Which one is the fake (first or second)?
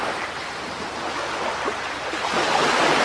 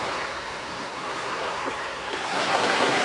second